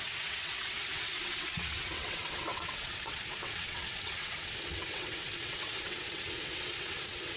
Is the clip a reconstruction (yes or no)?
yes